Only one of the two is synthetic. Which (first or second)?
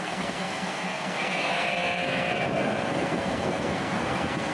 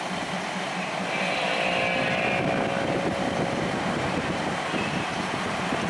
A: first